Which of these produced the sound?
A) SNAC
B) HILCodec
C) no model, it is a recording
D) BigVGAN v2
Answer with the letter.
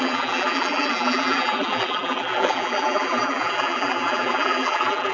D